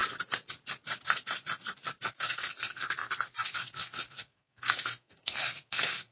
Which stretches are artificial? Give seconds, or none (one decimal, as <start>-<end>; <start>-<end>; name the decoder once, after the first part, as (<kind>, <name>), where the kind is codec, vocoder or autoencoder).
2.1-6.1 (codec, SNAC)